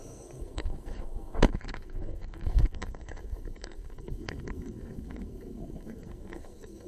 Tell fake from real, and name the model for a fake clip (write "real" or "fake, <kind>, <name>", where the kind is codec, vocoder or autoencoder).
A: fake, codec, SNAC